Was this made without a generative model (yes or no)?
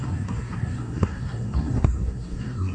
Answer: no